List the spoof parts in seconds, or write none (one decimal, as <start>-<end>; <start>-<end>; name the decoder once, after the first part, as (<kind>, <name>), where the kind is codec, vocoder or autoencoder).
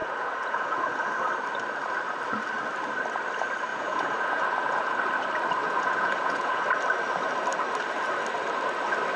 0.0-1.1 (vocoder, Vocos); 3.7-5.0; 5.6-6.6